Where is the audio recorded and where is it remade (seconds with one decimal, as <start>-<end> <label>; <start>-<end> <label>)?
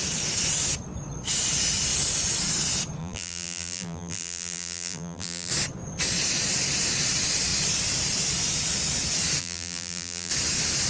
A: 0.0-3.0 recorded; 3.0-5.5 remade; 5.5-9.4 recorded; 9.4-10.3 remade; 10.3-10.9 recorded